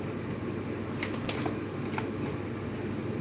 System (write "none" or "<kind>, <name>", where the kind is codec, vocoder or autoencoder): none